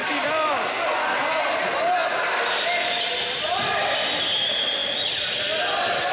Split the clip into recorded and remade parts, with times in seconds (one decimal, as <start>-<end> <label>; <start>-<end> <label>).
0.0-0.5 remade; 0.5-2.0 recorded; 2.0-4.2 remade; 4.2-4.8 recorded; 4.8-5.6 remade; 5.6-6.1 recorded